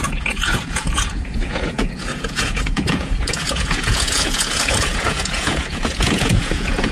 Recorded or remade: remade